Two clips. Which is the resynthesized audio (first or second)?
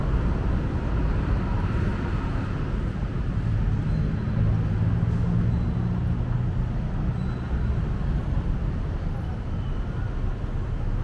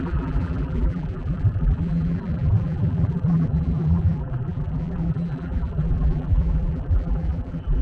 second